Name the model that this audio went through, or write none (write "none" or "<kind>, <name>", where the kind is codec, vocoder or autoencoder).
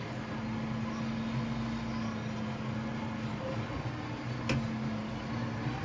none